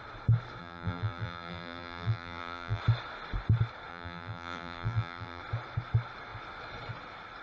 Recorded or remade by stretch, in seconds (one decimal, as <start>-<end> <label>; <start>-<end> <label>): 0.0-0.6 recorded; 0.6-2.8 remade; 2.8-3.9 recorded; 3.9-5.4 remade; 5.4-7.4 recorded